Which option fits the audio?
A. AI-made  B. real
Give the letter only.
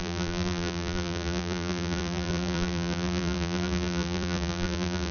A